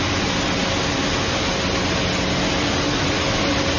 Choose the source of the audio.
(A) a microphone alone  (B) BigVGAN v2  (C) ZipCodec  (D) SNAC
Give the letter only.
A